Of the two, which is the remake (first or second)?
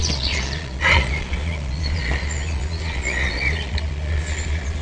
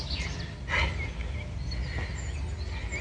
first